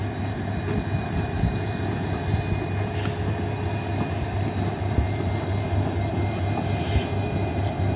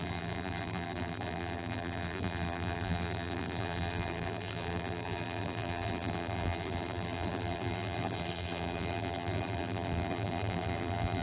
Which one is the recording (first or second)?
first